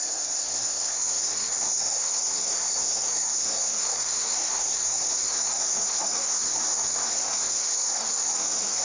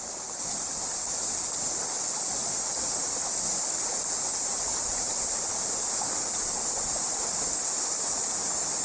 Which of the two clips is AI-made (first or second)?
first